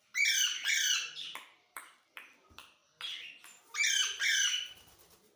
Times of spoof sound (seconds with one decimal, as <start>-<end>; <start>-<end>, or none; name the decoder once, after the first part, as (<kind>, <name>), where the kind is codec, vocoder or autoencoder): 0.0-2.8 (vocoder, BigVGAN v2); 4.2-5.4